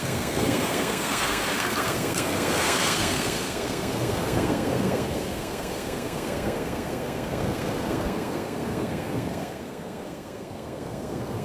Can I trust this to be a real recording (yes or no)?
no